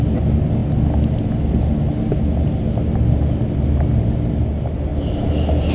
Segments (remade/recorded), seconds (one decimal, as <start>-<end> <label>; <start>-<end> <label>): 0.0-4.9 recorded; 4.9-5.7 remade